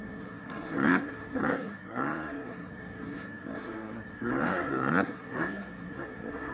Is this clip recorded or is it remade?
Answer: remade